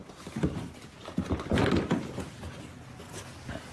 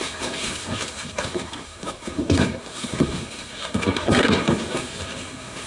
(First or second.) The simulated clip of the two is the second